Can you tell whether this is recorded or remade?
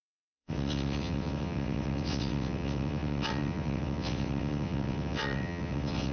remade